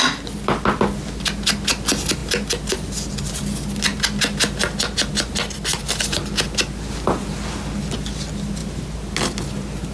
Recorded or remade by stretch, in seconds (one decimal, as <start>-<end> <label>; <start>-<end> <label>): 0.0-9.9 recorded